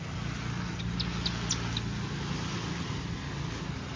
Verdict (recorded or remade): recorded